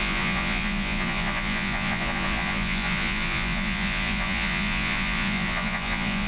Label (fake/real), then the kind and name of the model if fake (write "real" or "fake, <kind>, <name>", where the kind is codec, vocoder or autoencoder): fake, vocoder, Vocos